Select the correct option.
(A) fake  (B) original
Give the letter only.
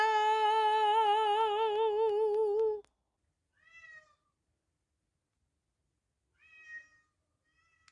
B